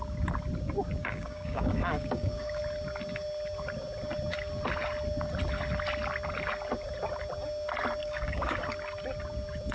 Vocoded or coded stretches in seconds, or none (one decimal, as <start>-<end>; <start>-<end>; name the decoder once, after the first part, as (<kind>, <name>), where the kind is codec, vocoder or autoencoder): 1.0-2.6 (codec, DAC); 8.0-8.6